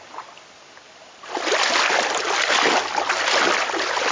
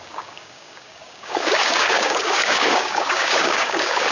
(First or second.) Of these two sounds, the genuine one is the first